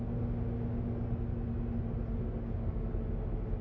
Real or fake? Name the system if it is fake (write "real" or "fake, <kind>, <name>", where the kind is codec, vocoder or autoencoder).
real